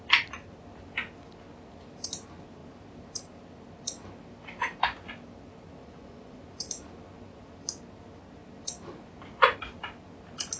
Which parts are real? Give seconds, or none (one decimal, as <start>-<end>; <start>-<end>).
0.0-5.8; 6.4-10.6